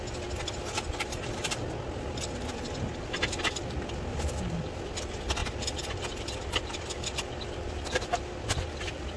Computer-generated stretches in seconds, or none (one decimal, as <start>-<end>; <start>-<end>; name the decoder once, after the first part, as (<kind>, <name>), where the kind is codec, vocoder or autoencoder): 4.1-4.7 (vocoder, BigVGAN v2); 5.4-9.2